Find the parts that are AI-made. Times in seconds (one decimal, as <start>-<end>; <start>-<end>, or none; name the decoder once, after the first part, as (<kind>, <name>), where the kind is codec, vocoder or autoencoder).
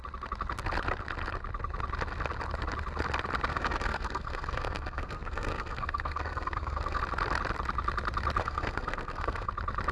3.5-7.0 (codec, SNAC); 8.4-9.5